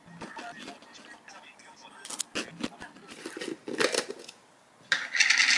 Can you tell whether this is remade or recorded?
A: recorded